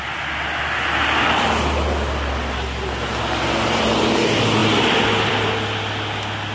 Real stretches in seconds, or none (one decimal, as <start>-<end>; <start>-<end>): 0.0-6.5